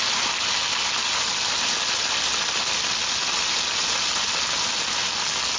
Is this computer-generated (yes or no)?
no